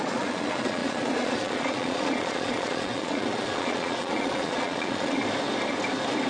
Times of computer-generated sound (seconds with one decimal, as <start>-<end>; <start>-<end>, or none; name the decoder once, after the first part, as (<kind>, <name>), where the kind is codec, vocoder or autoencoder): 0.0-5.2 (vocoder, Vocos)